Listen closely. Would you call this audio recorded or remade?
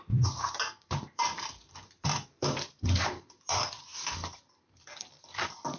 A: remade